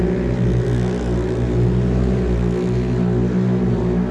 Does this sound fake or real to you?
real